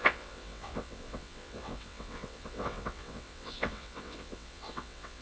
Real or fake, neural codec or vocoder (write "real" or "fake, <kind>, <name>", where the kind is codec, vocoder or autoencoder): fake, vocoder, WaveNeXt